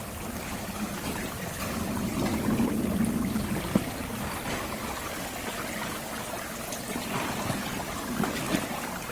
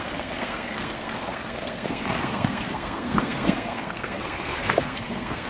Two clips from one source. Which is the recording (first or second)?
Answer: first